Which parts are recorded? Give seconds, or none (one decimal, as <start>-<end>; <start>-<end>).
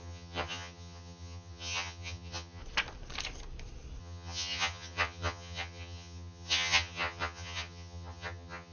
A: 2.6-4.0